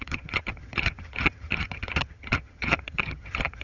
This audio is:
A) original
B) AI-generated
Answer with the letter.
B